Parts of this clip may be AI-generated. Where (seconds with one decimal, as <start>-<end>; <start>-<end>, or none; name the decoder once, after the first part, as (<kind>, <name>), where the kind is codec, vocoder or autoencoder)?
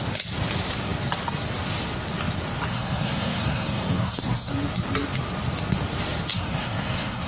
2.7-4.5 (codec, SNAC); 6.3-7.3